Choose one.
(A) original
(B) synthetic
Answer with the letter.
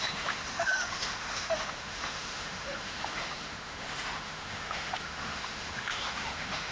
B